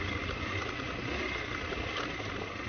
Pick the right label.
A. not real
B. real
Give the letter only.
B